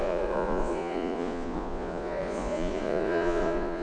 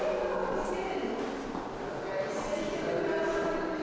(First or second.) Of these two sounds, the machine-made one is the first